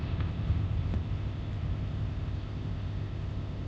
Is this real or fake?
fake